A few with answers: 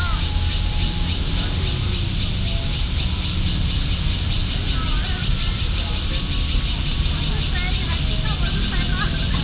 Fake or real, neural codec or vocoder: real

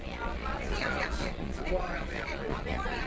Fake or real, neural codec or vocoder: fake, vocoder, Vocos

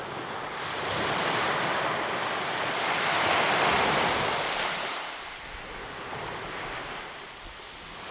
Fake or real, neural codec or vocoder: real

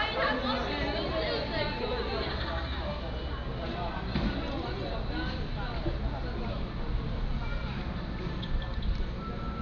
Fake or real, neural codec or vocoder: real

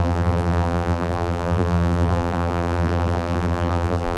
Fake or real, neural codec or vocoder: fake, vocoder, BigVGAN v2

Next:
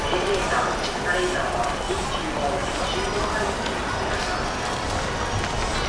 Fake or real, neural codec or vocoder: real